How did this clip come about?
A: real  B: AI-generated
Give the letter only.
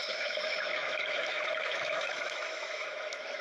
B